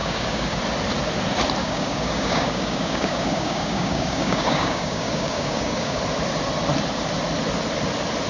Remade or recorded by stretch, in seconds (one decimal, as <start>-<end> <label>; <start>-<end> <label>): 0.0-0.6 remade; 0.6-1.6 recorded; 1.6-6.0 remade; 6.0-8.3 recorded